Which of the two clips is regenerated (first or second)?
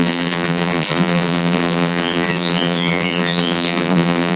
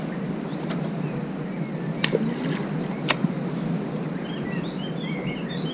first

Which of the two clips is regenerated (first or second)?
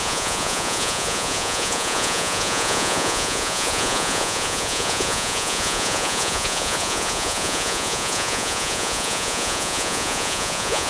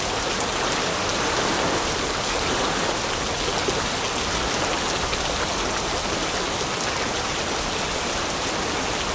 first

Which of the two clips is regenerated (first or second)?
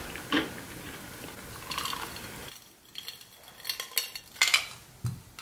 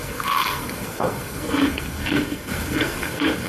second